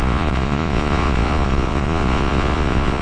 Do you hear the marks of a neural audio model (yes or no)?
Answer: yes